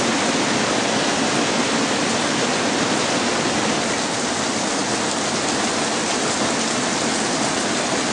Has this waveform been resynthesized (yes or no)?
no